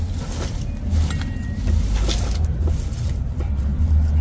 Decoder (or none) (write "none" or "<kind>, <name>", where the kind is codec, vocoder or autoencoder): none